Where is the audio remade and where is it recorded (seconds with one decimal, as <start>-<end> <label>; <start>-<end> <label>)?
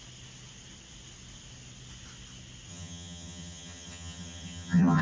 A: 0.0-2.7 recorded; 2.7-5.0 remade